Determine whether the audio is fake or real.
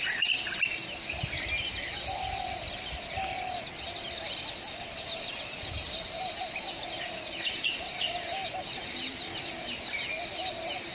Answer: real